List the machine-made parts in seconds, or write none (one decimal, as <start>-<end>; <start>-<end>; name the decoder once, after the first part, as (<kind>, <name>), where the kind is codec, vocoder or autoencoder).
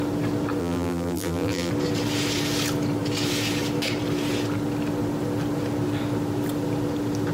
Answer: 0.6-1.7 (vocoder, BigVGAN v2)